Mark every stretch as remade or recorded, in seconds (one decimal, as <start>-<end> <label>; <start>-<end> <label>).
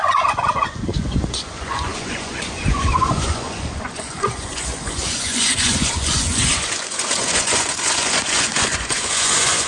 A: 0.0-9.7 remade